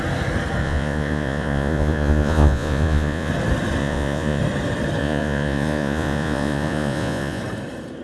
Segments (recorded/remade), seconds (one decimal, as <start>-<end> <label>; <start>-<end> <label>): 0.0-0.6 recorded; 0.6-3.3 remade; 3.3-3.8 recorded; 3.8-4.4 remade; 4.4-5.0 recorded; 5.0-7.4 remade; 7.4-8.0 recorded